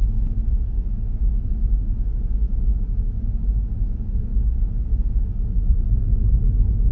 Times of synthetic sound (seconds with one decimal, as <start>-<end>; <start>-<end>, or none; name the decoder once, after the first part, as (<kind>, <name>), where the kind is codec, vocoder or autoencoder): 0.0-4.3 (autoencoder, DAC-VAE); 5.1-6.9